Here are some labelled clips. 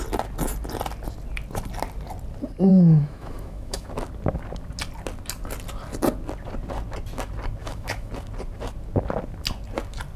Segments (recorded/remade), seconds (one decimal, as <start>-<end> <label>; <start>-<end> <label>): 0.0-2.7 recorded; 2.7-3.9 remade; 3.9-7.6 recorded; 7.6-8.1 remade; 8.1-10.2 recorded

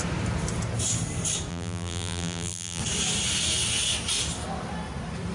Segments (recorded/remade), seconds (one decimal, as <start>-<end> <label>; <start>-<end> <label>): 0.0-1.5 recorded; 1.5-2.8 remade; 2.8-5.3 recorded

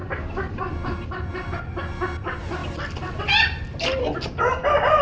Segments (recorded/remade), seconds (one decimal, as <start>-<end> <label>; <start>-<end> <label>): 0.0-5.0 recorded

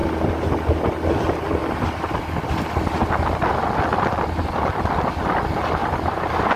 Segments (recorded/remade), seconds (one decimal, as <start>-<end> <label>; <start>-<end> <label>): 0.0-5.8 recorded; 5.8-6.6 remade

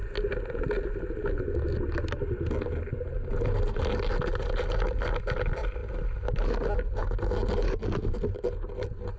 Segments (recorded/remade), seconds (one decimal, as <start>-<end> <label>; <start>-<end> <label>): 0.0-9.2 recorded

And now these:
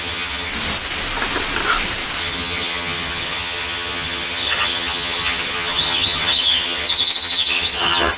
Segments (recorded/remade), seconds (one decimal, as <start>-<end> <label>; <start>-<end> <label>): 0.0-0.5 remade; 0.5-2.2 recorded; 2.2-8.2 remade

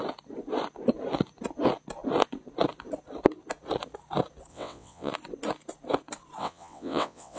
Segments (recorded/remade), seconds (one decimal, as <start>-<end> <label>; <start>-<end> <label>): 0.0-4.5 recorded; 4.5-5.1 remade; 5.1-6.4 recorded; 6.4-7.4 remade